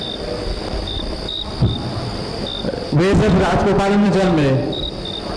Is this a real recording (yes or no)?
no